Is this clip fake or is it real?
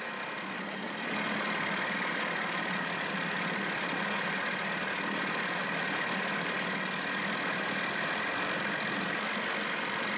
real